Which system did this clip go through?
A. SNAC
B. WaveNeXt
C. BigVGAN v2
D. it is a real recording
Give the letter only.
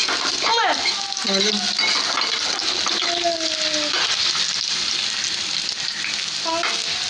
D